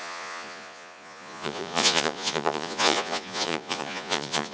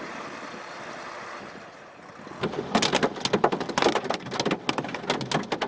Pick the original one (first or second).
second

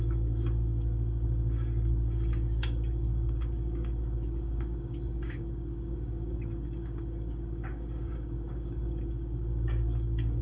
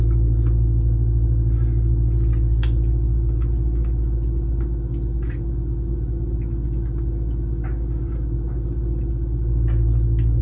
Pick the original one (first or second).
second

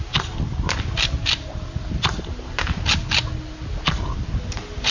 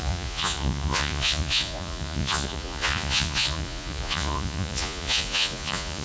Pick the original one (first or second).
first